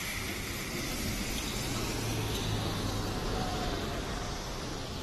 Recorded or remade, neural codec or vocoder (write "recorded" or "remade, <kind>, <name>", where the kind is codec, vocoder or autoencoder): recorded